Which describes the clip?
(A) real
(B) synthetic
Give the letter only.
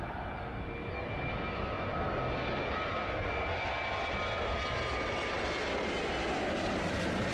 A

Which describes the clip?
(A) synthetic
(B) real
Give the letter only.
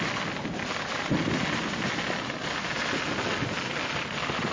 B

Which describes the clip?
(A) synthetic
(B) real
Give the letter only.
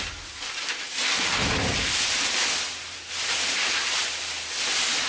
B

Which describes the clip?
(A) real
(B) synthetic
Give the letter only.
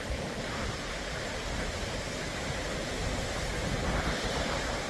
A